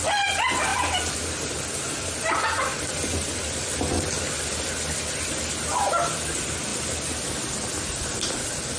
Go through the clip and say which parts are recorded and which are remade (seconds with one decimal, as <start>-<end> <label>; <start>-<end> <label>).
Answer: 0.0-8.8 recorded